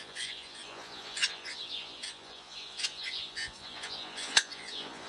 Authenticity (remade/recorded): remade